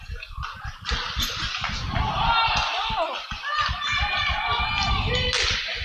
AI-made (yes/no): no